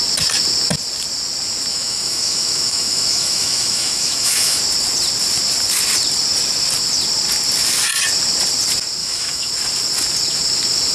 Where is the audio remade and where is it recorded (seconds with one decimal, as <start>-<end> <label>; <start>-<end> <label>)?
0.0-1.7 recorded; 1.7-4.6 remade; 4.6-9.0 recorded; 9.0-9.5 remade; 9.5-10.9 recorded